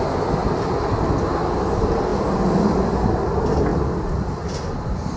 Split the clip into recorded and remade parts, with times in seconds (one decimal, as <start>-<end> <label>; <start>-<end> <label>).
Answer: 0.0-5.2 recorded